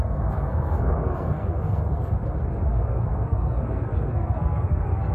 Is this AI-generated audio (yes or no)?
yes